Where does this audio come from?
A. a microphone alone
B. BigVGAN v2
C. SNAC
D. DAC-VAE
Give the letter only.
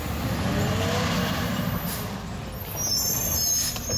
A